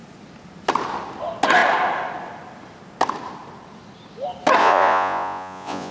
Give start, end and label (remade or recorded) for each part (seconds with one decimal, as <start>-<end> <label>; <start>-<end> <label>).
0.0-4.6 recorded; 4.6-5.9 remade